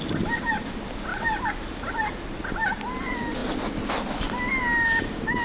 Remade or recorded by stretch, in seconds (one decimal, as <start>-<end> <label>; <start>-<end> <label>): 0.0-5.4 recorded